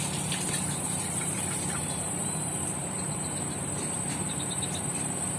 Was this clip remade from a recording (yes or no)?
yes